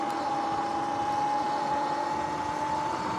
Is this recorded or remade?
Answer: recorded